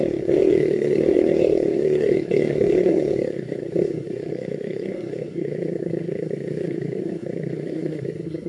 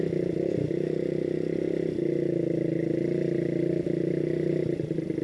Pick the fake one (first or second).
first